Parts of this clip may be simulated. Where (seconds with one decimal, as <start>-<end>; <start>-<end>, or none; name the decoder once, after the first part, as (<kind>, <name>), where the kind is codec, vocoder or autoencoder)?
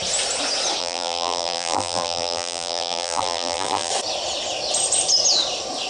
0.8-3.9 (vocoder, BigVGAN v2)